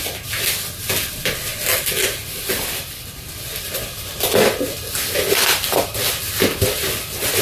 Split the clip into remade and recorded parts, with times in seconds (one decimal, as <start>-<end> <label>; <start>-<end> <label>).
0.0-7.4 recorded